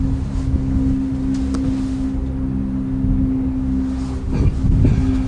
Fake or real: real